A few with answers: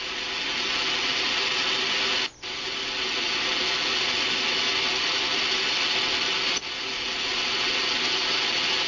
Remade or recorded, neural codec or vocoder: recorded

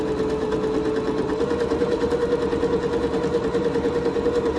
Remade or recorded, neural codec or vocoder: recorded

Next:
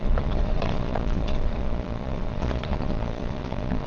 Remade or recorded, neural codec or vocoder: remade, vocoder, Vocos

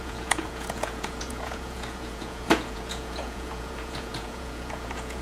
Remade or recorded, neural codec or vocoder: remade, vocoder, Vocos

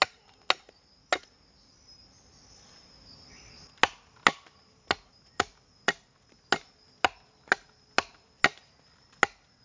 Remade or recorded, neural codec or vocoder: recorded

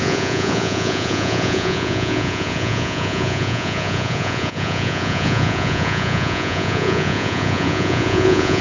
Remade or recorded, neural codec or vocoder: remade, vocoder, Vocos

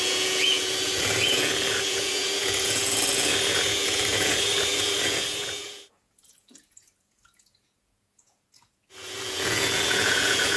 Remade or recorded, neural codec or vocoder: remade, vocoder, Vocos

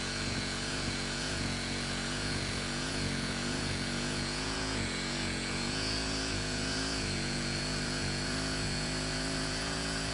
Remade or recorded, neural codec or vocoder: remade, vocoder, Vocos